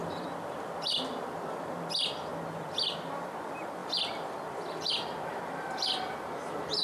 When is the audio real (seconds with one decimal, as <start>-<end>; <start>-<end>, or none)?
2.3-3.1